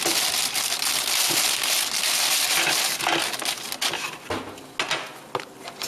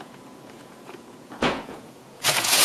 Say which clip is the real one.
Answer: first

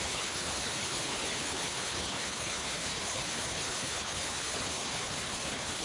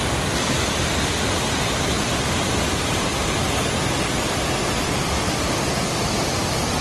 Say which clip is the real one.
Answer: second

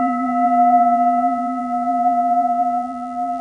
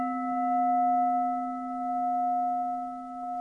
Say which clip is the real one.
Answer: second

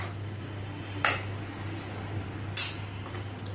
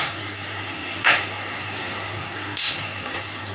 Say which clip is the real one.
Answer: first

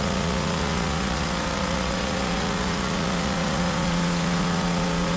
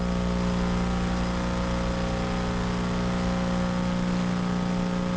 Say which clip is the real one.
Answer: second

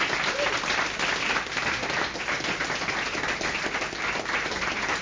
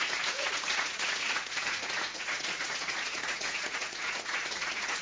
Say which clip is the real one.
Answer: first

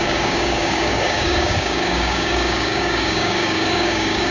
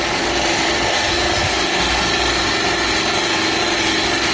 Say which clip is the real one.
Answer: second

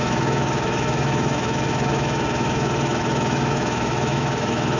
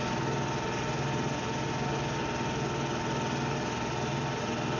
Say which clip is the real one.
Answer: second